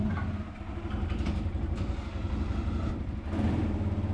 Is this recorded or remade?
recorded